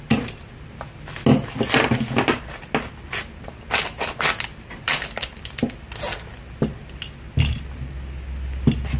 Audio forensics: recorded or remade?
recorded